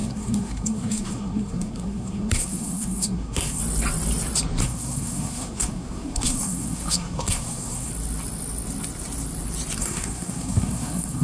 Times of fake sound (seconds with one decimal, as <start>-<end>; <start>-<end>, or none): 0.0-3.6; 4.6-7.9; 9.8-11.2